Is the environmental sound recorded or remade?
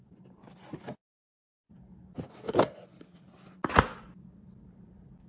recorded